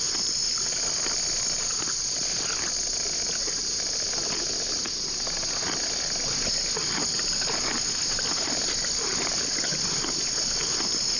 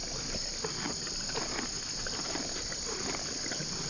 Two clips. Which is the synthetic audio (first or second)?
second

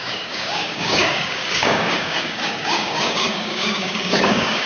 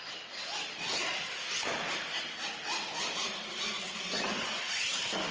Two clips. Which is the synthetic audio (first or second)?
first